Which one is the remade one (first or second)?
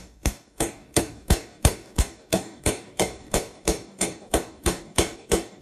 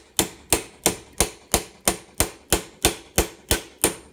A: first